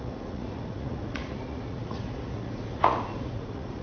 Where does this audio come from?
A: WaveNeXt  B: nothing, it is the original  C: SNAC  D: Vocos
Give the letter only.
D